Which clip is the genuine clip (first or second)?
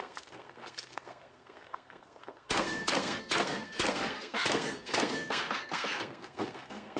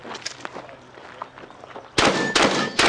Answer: second